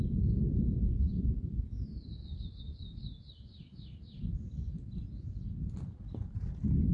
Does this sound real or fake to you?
real